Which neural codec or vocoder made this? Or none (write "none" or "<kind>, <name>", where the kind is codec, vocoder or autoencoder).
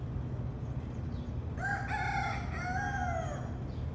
none